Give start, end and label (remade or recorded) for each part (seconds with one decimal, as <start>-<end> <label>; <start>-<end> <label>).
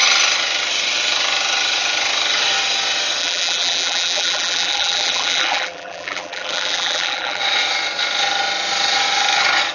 0.0-3.2 recorded; 3.2-7.4 remade; 7.4-9.7 recorded